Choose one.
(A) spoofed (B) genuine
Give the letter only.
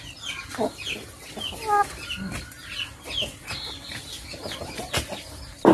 B